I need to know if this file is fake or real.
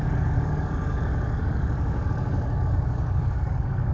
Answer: fake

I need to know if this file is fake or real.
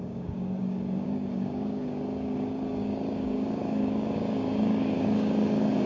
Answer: fake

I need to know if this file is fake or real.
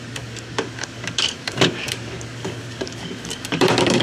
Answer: fake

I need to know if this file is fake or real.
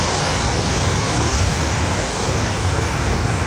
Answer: fake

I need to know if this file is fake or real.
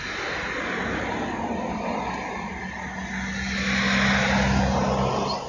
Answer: real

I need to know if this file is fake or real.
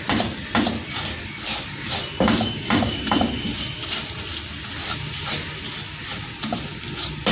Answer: real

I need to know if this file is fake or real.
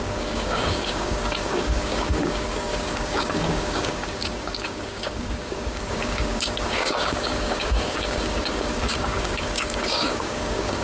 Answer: fake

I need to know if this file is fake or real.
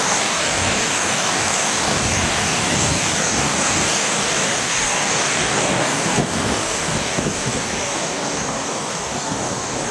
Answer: fake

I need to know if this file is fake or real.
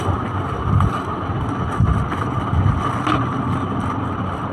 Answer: real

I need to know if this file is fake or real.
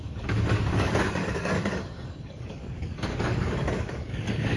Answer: fake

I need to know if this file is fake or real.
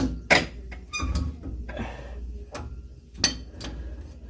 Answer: real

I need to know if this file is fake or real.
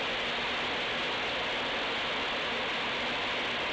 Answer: real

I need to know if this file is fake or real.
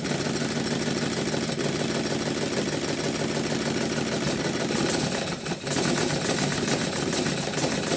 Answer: real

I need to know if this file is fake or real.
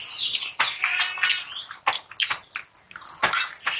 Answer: real